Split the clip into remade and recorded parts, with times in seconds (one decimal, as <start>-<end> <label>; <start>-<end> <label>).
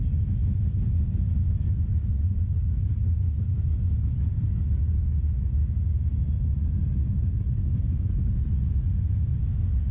0.0-9.9 recorded